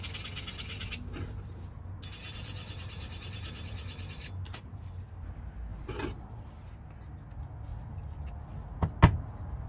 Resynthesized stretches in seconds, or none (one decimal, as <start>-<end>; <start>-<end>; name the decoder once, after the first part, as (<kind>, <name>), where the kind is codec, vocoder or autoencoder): 2.2-4.7 (vocoder, BigVGAN v2); 5.7-6.8